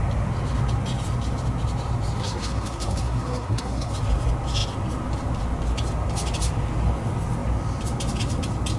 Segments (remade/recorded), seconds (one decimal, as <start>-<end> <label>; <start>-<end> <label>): 0.0-2.2 recorded; 2.2-3.9 remade; 3.9-8.8 recorded

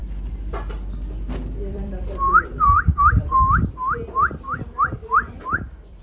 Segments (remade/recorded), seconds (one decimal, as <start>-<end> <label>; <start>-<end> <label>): 0.0-3.6 remade; 3.6-5.0 recorded; 5.0-6.0 remade

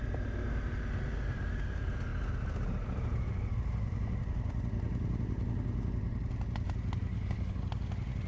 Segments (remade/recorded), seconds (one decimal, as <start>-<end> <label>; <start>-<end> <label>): 0.0-7.1 recorded; 7.1-7.6 remade; 7.6-8.3 recorded